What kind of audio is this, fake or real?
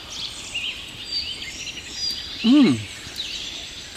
real